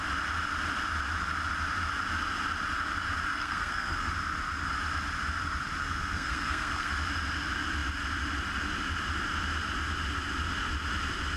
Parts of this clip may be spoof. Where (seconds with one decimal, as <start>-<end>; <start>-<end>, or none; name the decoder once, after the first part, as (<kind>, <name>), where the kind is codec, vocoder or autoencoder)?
3.3-4.1 (codec, SNAC); 5.8-6.9